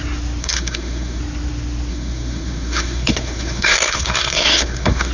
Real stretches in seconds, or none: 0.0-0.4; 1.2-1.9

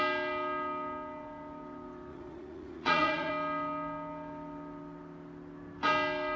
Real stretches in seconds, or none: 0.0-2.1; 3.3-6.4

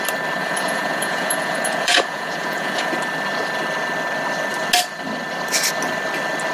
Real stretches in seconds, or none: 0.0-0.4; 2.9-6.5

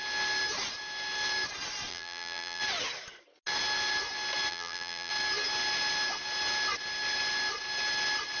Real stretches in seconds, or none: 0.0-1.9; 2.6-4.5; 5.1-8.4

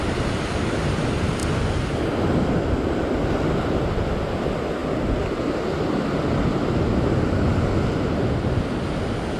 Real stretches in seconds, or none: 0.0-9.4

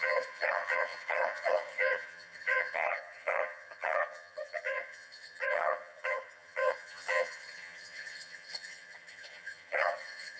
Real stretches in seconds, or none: none

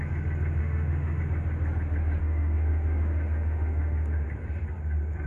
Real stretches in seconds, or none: 0.0-0.6; 1.2-2.2; 4.3-5.3